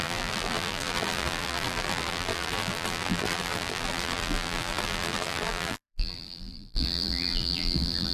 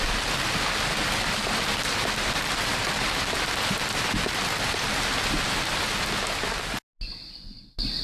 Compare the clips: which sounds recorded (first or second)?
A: second